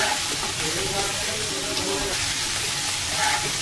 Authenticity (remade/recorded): recorded